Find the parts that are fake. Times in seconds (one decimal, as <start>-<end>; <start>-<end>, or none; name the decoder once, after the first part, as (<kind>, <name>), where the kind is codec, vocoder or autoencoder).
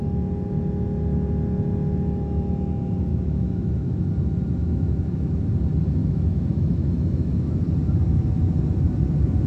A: 3.1-4.1 (autoencoder, DAC-VAE); 4.6-5.4; 6.0-7.6